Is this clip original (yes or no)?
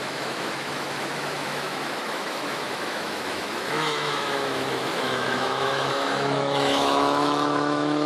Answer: no